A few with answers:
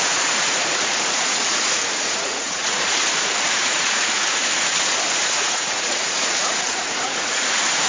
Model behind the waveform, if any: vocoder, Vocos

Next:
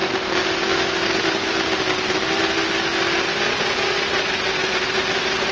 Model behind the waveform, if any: none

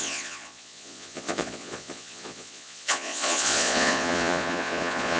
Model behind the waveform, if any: vocoder, Vocos